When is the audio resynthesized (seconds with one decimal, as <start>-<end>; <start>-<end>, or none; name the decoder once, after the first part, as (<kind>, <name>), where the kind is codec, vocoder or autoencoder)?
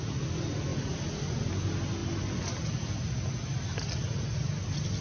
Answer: none